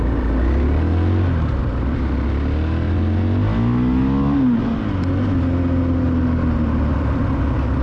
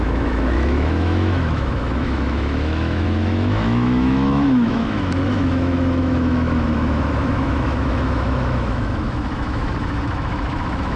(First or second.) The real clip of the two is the first